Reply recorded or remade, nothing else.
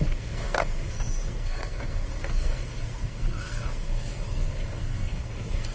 remade